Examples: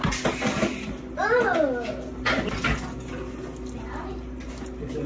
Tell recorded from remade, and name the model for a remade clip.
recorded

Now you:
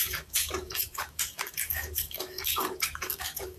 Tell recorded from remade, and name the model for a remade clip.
remade, codec, DAC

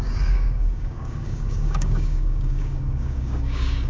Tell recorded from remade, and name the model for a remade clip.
remade, codec, DAC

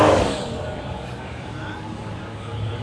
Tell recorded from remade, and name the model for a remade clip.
remade, codec, DAC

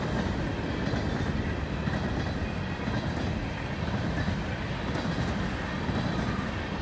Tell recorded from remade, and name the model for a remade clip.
recorded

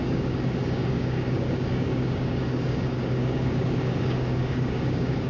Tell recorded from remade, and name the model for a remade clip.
remade, codec, DAC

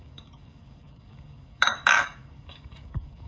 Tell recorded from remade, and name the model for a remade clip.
remade, codec, DAC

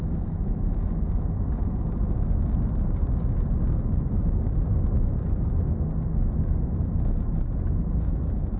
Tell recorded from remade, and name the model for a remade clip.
recorded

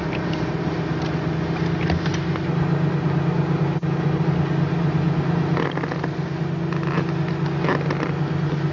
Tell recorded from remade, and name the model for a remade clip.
recorded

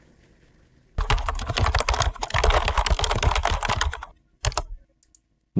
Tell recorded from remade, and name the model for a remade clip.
recorded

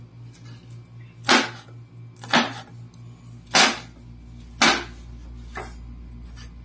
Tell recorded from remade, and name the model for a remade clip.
recorded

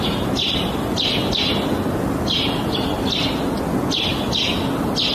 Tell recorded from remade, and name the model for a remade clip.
recorded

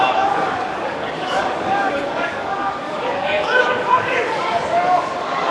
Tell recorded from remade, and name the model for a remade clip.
remade, codec, DAC